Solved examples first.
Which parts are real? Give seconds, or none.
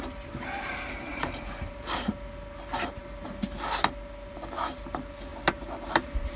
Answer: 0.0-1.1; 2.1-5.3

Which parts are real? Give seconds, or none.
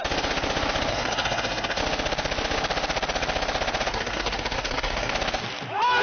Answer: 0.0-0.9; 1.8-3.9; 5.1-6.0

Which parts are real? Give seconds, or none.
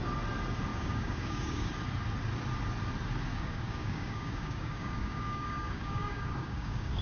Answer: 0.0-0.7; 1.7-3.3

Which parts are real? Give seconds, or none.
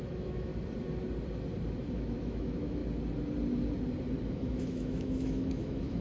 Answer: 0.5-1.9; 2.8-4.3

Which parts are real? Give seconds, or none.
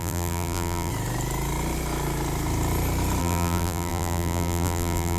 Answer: 0.9-3.2